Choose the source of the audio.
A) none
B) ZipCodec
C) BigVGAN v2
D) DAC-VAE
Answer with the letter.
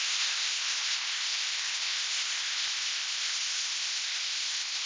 B